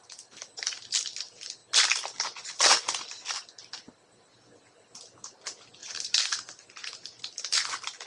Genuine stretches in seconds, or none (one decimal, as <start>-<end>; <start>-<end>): 0.0-5.8; 7.2-8.1